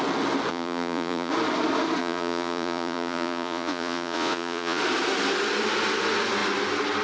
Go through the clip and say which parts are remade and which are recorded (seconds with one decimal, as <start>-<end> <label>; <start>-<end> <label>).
0.0-0.5 recorded; 0.5-1.3 remade; 1.3-2.0 recorded; 2.0-4.8 remade; 4.8-7.0 recorded